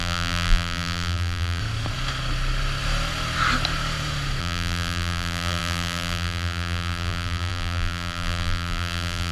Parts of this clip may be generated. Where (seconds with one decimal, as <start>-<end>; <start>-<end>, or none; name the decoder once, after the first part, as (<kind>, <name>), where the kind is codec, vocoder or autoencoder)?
0.0-1.6 (vocoder, BigVGAN v2); 4.4-9.3